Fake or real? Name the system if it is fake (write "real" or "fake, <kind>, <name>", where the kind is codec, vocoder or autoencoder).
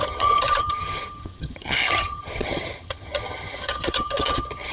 fake, vocoder, HiFi-GAN